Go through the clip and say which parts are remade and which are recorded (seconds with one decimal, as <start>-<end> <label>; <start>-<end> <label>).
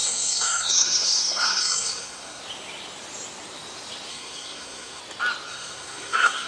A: 0.0-2.4 remade; 2.4-4.1 recorded; 4.1-5.0 remade; 5.0-5.5 recorded; 5.5-6.5 remade